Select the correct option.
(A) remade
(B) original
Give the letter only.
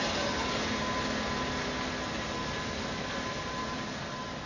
B